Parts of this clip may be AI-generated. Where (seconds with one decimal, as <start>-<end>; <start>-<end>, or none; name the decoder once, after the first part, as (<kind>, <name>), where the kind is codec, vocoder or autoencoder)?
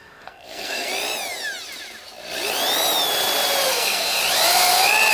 0.0-0.9 (codec, SNAC); 3.7-4.2